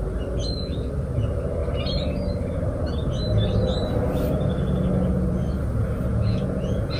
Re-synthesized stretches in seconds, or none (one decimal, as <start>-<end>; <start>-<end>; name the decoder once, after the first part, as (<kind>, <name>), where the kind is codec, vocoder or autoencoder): 0.4-0.9 (vocoder, Vocos); 6.1-7.0